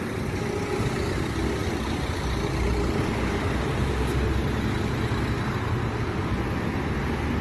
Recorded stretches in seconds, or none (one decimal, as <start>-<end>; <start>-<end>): 0.0-7.4